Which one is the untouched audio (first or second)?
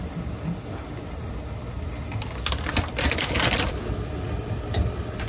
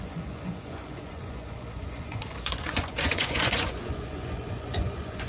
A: first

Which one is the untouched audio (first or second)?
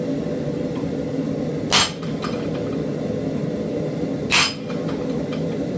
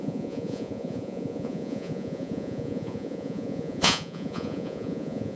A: first